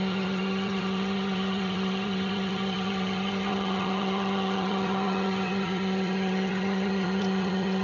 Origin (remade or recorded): remade